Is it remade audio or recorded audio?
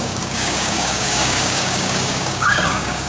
remade